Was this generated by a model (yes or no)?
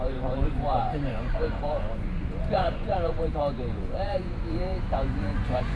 yes